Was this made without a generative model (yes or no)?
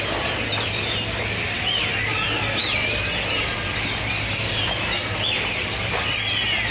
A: yes